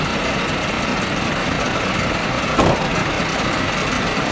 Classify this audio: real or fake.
real